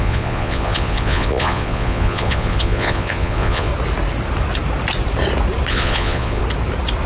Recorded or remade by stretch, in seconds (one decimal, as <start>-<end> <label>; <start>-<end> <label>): 0.0-3.7 remade; 3.7-5.7 recorded; 5.7-6.4 remade; 6.4-7.1 recorded